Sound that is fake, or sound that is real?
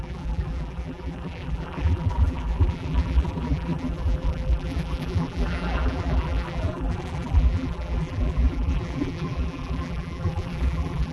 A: fake